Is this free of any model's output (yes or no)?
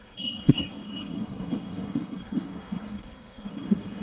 no